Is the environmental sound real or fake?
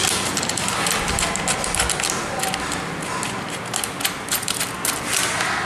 real